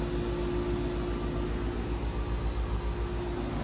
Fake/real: real